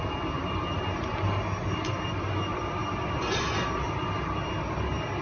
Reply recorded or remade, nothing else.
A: recorded